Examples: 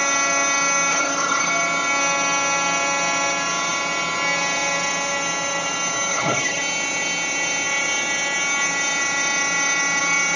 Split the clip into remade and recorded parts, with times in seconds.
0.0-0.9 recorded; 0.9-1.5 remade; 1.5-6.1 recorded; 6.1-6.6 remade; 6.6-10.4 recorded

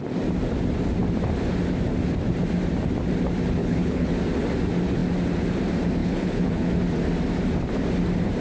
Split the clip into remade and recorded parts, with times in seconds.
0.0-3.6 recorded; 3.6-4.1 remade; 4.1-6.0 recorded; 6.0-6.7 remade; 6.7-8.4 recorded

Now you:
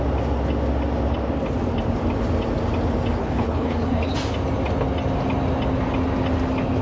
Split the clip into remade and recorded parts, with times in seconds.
0.0-3.2 recorded; 3.2-4.1 remade; 4.1-6.8 recorded

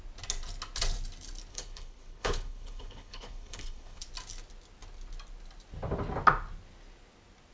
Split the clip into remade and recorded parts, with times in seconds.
0.0-1.5 recorded; 1.5-4.0 remade; 4.0-7.5 recorded

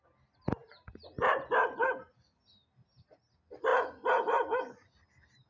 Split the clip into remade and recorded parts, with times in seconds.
0.0-5.5 recorded